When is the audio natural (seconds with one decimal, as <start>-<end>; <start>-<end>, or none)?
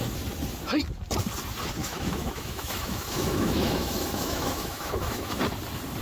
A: 0.0-1.8; 5.4-6.0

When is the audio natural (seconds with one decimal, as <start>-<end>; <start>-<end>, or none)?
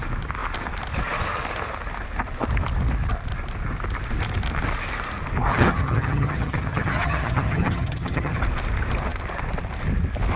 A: 0.0-5.5; 8.4-10.4